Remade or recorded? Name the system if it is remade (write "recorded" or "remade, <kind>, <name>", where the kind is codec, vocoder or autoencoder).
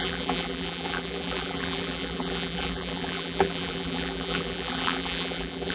remade, vocoder, BigVGAN v2